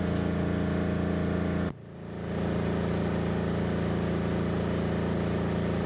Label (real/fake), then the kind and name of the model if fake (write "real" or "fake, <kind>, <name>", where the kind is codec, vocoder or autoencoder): real